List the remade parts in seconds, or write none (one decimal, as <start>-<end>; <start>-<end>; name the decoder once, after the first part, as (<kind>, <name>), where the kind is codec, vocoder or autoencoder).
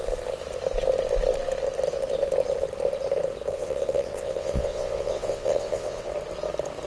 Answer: 3.5-6.1 (vocoder, WaveNeXt)